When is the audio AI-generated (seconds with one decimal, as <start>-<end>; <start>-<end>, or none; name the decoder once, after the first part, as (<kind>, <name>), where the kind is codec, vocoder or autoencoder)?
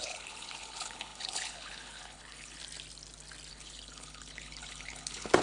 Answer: 0.0-2.6 (codec, HILCodec); 3.5-5.4